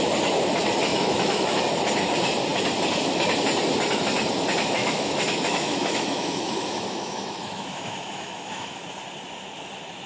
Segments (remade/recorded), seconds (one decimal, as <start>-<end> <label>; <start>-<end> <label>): 0.0-0.9 recorded; 0.9-1.6 remade; 1.6-4.8 recorded; 4.8-8.8 remade; 8.8-10.1 recorded